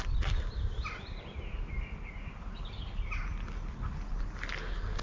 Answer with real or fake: real